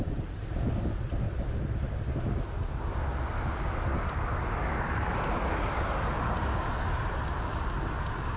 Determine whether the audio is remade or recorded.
recorded